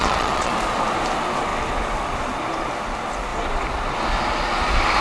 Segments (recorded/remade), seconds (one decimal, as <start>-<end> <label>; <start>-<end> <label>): 0.0-0.5 remade; 0.5-5.0 recorded